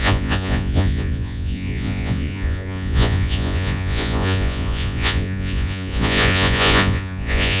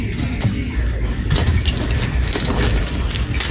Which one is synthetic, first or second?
first